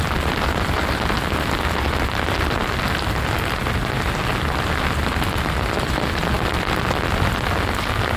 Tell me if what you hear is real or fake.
real